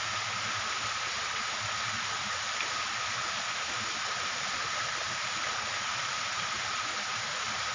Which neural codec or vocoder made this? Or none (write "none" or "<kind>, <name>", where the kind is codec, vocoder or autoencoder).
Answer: none